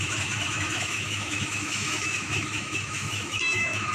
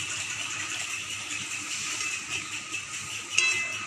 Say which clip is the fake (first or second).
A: first